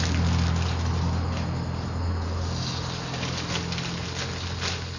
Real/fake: real